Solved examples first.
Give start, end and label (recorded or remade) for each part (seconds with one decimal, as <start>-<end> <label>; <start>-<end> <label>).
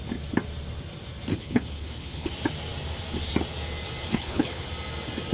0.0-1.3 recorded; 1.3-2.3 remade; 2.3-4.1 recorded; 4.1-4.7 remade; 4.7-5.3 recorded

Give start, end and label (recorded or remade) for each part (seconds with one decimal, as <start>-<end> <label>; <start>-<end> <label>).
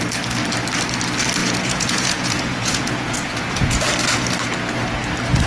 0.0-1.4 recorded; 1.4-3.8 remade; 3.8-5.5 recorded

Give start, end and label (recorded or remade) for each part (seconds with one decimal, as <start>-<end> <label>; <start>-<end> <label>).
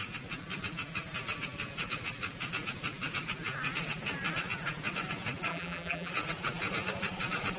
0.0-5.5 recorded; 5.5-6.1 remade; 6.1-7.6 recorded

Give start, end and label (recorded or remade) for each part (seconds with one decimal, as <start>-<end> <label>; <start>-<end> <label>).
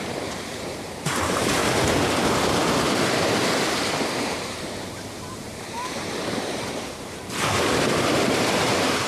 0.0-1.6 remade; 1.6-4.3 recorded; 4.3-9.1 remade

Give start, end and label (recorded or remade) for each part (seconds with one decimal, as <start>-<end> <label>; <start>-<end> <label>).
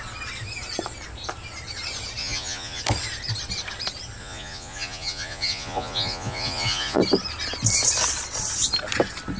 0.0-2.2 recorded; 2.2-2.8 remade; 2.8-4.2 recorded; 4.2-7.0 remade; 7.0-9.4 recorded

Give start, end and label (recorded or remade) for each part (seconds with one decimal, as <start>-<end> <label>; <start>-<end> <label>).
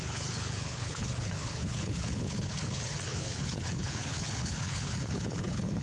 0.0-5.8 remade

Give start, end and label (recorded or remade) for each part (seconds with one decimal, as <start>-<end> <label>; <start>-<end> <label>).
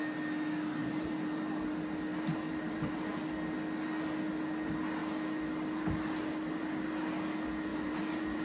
0.0-0.8 recorded; 0.8-1.7 remade; 1.7-2.1 recorded; 2.1-3.2 remade; 3.2-7.7 recorded; 7.7-8.4 remade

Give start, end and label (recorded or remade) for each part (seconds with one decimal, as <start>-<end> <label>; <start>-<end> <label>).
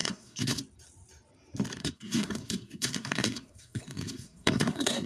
0.0-0.6 remade; 0.6-1.8 recorded; 1.8-5.1 remade